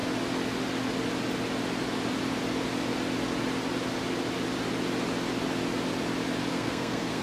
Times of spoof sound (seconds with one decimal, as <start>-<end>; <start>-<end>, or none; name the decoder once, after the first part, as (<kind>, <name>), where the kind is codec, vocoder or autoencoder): 6.5-7.2 (codec, SNAC)